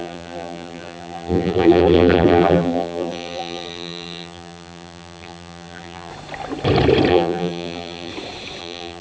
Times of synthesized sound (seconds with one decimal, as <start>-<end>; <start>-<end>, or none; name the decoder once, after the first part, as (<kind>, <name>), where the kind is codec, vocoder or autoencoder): 0.0-6.1 (vocoder, BigVGAN v2); 7.1-8.1; 8.6-9.0